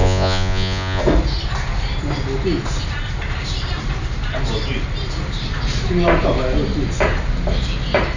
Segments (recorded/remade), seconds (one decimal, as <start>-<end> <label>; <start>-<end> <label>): 0.0-1.0 remade; 1.0-8.2 recorded

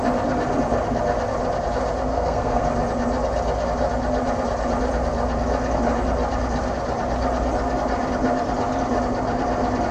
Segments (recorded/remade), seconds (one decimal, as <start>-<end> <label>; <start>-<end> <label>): 0.0-2.1 recorded; 2.1-2.6 remade; 2.6-9.9 recorded

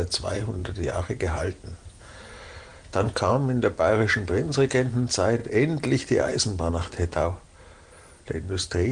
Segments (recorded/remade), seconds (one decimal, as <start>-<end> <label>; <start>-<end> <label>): 0.0-0.6 recorded; 0.6-2.2 remade; 2.2-2.7 recorded; 2.7-3.3 remade; 3.3-4.3 recorded; 4.3-4.9 remade; 4.9-8.9 recorded

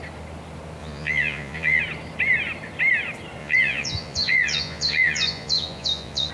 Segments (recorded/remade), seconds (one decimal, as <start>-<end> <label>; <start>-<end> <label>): 0.0-0.8 recorded; 0.8-1.8 remade; 1.8-3.4 recorded; 3.4-6.3 remade

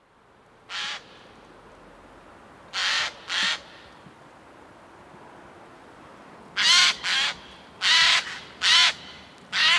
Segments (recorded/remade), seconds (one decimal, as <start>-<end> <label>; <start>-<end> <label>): 0.0-9.8 recorded